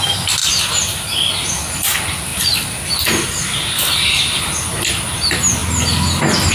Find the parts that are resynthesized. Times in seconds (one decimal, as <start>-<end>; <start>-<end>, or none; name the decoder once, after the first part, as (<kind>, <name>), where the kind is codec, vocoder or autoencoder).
0.4-1.3 (vocoder, BigVGAN v2)